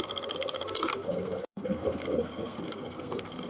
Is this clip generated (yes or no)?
yes